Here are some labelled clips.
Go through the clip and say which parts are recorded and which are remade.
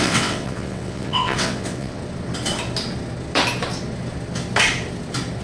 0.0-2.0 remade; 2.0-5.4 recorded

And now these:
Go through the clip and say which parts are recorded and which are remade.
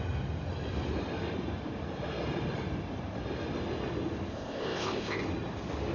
0.0-4.3 recorded; 4.3-5.2 remade; 5.2-5.9 recorded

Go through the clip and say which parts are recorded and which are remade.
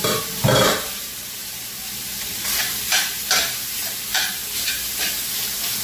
0.0-4.4 remade; 4.4-5.3 recorded; 5.3-5.8 remade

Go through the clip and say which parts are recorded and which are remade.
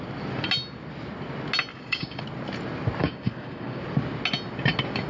0.0-1.7 recorded; 1.7-2.2 remade; 2.2-3.0 recorded; 3.0-3.8 remade; 3.8-5.1 recorded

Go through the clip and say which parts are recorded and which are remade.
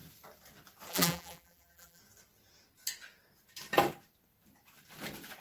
0.0-0.9 recorded; 0.9-2.0 remade; 2.0-5.4 recorded